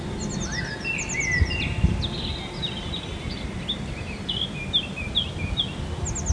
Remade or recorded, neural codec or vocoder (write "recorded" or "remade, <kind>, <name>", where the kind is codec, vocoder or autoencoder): recorded